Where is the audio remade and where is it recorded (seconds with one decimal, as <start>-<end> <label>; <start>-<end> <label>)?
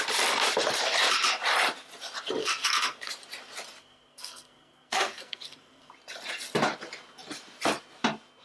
0.0-2.4 recorded; 2.4-3.1 remade; 3.1-3.8 recorded; 3.8-5.9 remade; 5.9-8.4 recorded